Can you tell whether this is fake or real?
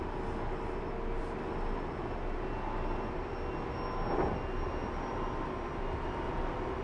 real